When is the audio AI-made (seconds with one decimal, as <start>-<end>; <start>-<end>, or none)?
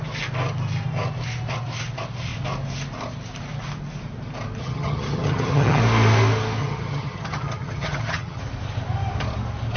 4.6-5.8; 6.6-8.4